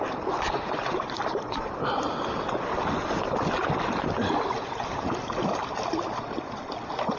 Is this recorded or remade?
recorded